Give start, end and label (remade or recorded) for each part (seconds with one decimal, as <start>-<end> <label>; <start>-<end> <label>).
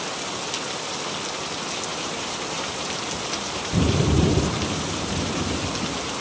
0.0-1.9 recorded; 1.9-5.6 remade; 5.6-6.2 recorded